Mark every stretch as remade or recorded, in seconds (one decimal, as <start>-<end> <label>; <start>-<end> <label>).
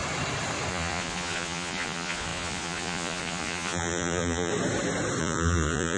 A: 0.0-0.7 recorded; 0.7-4.5 remade; 4.5-5.2 recorded; 5.2-6.0 remade